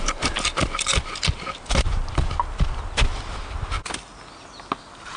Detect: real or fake real